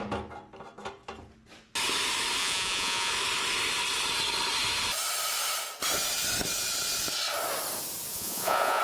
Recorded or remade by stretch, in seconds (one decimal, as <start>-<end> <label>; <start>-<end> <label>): 0.0-2.4 recorded; 2.4-3.1 remade; 3.1-8.1 recorded; 8.1-8.8 remade